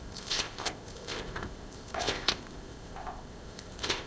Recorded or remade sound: remade